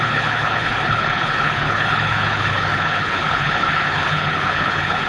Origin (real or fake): fake